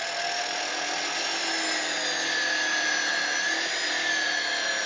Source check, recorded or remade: recorded